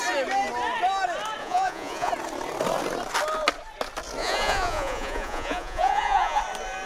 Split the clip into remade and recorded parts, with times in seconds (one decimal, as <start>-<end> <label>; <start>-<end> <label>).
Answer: 0.0-1.4 recorded; 1.4-2.1 remade; 2.1-4.2 recorded; 4.2-6.4 remade; 6.4-6.9 recorded